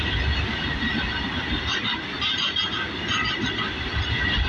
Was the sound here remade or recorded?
recorded